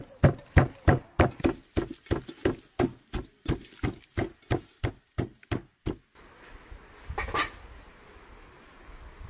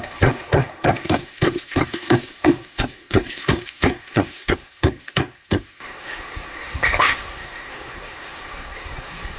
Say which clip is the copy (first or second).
second